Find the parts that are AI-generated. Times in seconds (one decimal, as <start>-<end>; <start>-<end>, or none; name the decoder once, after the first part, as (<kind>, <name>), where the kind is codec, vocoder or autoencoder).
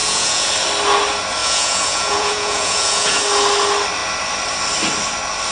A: 0.0-0.5 (vocoder, Vocos); 1.4-3.2